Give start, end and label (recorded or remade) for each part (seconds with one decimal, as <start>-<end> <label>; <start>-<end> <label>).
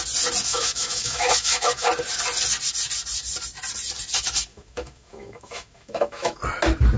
0.0-0.5 recorded; 0.5-1.9 remade; 1.9-4.5 recorded; 4.5-6.4 remade; 6.4-7.0 recorded